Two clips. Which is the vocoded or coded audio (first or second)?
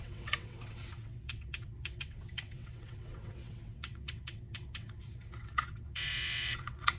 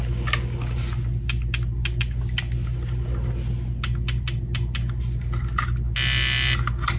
first